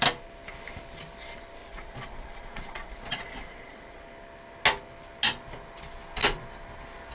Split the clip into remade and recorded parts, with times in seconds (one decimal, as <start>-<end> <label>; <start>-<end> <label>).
0.0-1.6 recorded; 1.6-4.0 remade; 4.0-7.1 recorded